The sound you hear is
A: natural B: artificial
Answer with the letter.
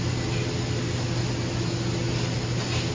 A